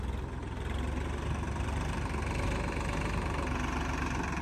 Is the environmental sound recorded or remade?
recorded